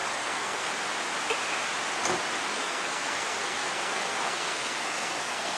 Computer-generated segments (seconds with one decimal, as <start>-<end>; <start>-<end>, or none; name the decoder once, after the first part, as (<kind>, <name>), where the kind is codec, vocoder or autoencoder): 0.0-0.7 (codec, SNAC); 2.5-5.6